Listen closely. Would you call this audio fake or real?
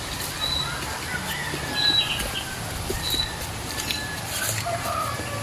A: real